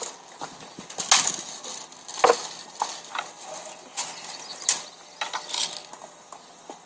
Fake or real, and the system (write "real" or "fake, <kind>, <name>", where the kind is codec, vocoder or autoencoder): real